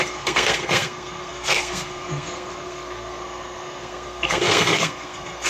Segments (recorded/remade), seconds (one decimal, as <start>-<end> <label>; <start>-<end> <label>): 0.0-5.5 remade